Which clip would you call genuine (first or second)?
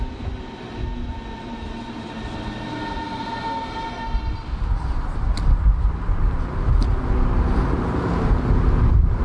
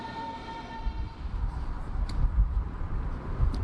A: first